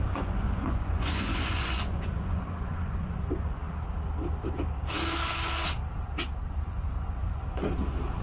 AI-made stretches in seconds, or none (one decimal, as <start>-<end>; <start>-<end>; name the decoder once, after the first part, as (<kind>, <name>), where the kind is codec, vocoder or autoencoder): 0.0-3.6 (vocoder, Vocos); 6.5-7.6